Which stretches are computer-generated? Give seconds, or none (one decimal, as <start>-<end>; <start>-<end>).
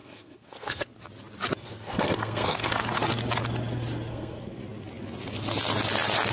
0.0-1.0; 1.6-2.7; 4.1-4.6